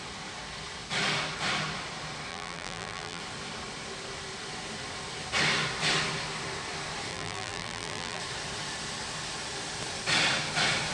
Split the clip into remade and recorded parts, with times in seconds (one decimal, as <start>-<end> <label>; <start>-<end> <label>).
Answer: 0.0-2.3 recorded; 2.3-3.2 remade; 3.2-7.1 recorded; 7.1-8.2 remade; 8.2-10.9 recorded